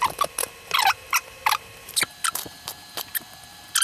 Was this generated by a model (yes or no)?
no